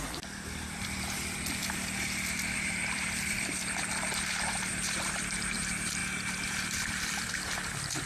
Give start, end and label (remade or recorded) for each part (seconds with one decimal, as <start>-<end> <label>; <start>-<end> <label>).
0.0-6.0 remade; 6.0-6.5 recorded; 6.5-8.1 remade